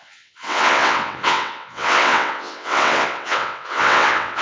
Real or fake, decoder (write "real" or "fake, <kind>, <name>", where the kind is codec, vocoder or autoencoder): fake, vocoder, WaveNeXt